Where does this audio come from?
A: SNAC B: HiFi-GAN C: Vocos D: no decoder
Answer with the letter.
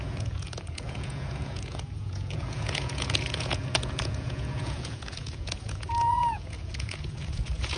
C